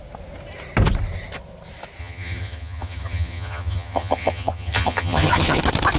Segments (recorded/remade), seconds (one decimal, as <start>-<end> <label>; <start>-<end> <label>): 0.0-2.0 recorded; 2.0-5.6 remade; 5.6-6.0 recorded